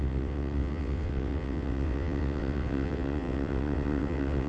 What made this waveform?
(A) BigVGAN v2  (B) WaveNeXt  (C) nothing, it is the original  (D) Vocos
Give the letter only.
B